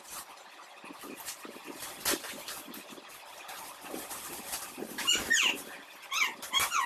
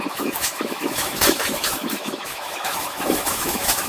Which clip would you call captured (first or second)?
first